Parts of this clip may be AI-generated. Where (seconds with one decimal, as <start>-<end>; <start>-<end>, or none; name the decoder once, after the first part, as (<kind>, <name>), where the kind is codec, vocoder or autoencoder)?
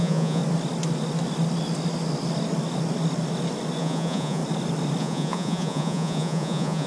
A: 0.0-0.4 (vocoder, Vocos); 3.8-4.4; 5.0-6.9